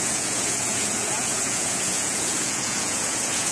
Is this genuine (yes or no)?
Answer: no